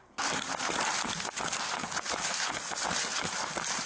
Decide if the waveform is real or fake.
real